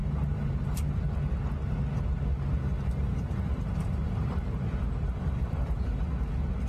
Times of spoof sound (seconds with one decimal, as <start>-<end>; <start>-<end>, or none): 0.0-1.0; 2.6-5.9